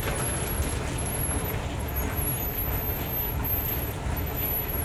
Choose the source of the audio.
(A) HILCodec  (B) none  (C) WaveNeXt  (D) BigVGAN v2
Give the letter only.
B